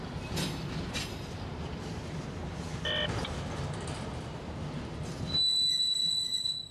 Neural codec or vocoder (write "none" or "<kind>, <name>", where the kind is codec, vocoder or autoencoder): none